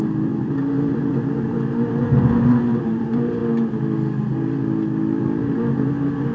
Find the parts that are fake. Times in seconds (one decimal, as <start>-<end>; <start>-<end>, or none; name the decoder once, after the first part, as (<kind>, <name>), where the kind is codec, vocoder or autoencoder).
0.0-3.4 (vocoder, BigVGAN v2); 5.2-6.3